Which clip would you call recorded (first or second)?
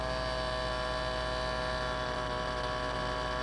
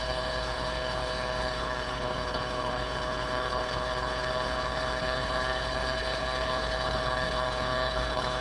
first